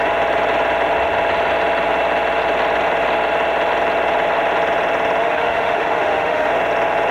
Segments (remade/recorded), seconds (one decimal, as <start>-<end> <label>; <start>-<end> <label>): 0.0-5.2 recorded; 5.2-6.5 remade; 6.5-7.1 recorded